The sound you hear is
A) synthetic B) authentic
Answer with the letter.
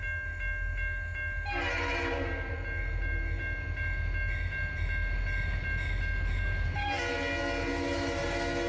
B